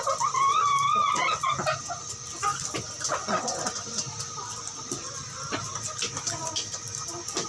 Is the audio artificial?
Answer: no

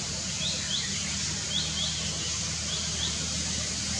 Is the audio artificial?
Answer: no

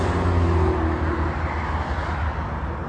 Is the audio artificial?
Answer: no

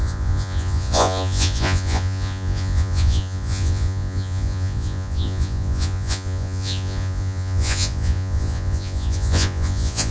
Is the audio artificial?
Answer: yes